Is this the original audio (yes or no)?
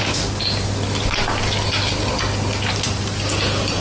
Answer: yes